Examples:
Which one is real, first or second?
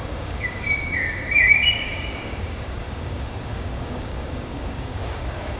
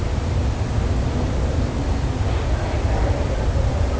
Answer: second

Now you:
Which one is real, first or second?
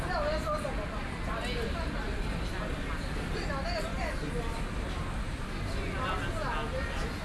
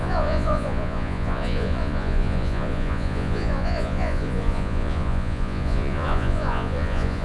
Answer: first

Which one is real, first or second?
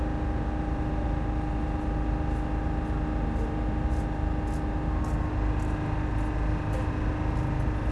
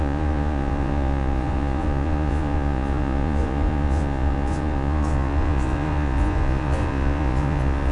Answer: first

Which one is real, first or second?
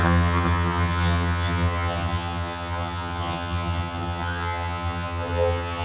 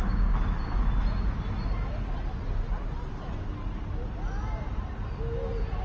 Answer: second